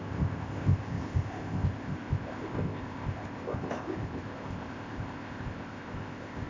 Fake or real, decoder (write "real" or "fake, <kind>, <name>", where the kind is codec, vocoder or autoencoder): fake, codec, ZipCodec